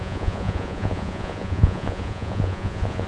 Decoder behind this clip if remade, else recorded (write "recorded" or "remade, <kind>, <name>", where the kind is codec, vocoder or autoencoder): remade, vocoder, Vocos